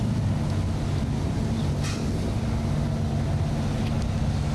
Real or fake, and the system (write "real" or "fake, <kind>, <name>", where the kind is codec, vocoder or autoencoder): real